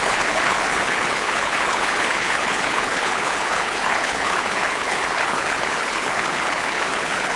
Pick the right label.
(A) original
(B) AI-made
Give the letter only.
B